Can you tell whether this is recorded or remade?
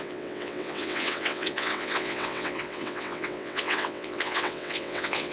remade